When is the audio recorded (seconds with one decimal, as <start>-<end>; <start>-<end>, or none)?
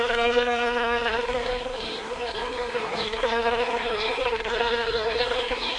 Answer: none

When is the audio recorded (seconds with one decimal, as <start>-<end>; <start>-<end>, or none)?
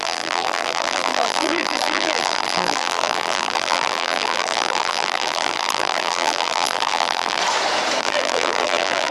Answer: 7.4-8.0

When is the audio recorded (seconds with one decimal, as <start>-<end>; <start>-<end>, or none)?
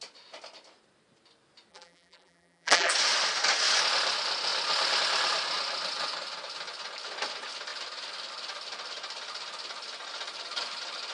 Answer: 0.0-1.7; 2.9-11.1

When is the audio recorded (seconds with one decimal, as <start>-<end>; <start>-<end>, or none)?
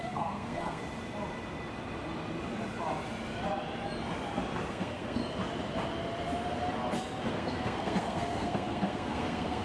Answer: 0.8-4.7; 5.2-7.3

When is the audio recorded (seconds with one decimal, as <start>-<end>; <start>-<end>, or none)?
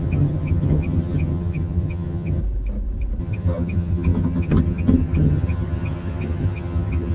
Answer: 2.4-3.2